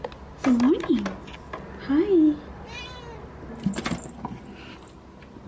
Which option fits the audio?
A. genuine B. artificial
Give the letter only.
A